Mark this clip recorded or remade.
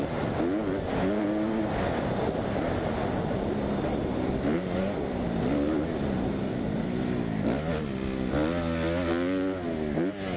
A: recorded